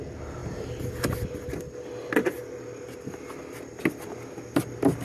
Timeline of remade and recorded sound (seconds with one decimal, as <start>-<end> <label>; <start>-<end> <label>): 0.0-5.0 recorded